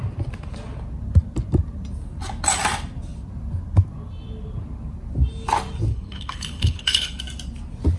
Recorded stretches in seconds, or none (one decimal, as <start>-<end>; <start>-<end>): 0.0-5.9; 7.2-8.0